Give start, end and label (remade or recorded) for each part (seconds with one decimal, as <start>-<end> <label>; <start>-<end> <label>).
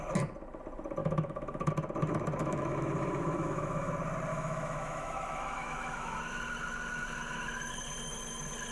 0.0-1.0 recorded; 1.0-1.7 remade; 1.7-2.4 recorded; 2.4-3.9 remade; 3.9-4.3 recorded; 4.3-6.2 remade; 6.2-8.7 recorded